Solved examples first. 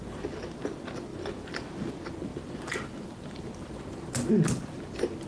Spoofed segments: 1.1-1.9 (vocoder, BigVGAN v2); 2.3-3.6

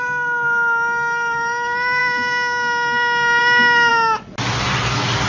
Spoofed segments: none

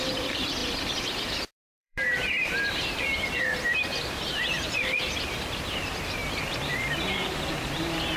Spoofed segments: 0.0-6.2 (vocoder, BigVGAN v2); 7.1-8.2

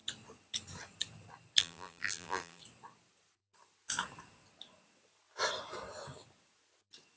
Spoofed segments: 1.6-2.6 (vocoder, BigVGAN v2)

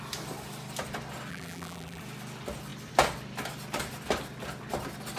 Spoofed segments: 1.3-2.0 (vocoder, BigVGAN v2)

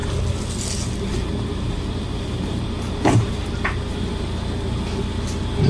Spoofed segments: none

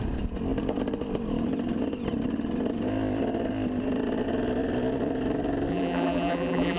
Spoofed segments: 5.7-6.8 (vocoder, BigVGAN v2)